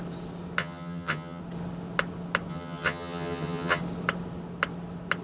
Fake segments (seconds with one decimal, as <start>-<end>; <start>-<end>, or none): 0.6-1.4; 2.5-3.8